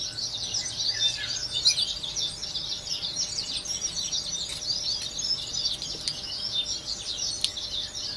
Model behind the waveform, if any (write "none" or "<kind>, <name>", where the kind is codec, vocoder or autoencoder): none